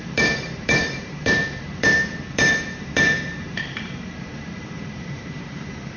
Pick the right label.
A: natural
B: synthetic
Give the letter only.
B